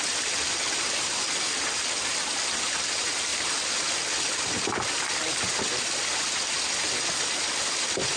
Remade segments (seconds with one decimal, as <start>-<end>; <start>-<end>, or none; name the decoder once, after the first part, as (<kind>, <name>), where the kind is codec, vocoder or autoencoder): none